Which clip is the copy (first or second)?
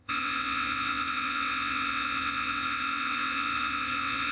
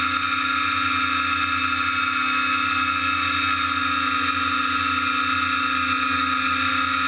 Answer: first